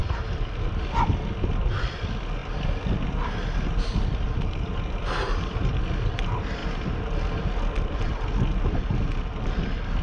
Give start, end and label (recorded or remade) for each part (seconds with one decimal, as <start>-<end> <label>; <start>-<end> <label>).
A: 0.0-0.8 remade; 0.8-10.0 recorded